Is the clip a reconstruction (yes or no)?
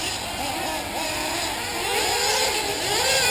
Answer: no